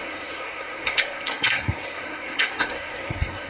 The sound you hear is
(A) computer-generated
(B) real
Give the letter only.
A